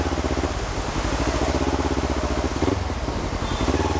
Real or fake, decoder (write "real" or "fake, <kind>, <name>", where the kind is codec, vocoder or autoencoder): real